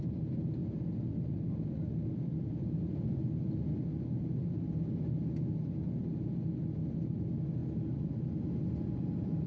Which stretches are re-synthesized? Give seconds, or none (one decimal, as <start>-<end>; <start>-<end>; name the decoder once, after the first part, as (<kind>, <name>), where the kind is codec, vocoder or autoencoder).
none